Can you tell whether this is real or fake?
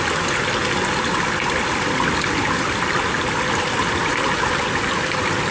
real